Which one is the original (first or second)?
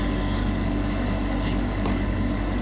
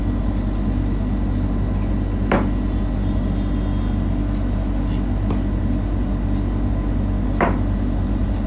second